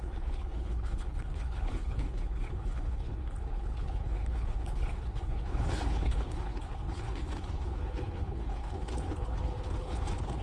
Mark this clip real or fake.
fake